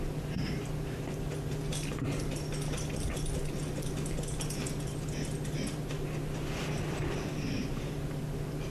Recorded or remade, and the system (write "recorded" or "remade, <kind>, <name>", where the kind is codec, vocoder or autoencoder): recorded